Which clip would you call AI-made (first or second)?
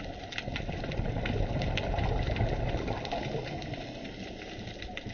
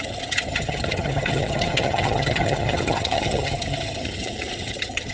second